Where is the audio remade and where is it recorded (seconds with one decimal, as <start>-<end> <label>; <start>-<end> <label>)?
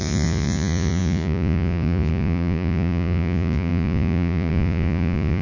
0.0-5.4 remade